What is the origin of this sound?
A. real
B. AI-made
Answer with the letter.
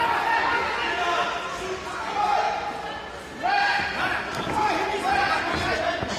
A